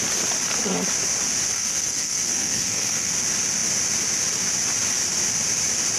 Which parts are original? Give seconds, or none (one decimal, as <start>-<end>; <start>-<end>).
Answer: 0.0-1.5; 3.1-6.0